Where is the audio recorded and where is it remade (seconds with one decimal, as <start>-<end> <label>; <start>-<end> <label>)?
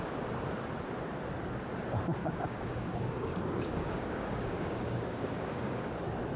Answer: 0.0-2.2 recorded; 2.2-5.9 remade; 5.9-6.4 recorded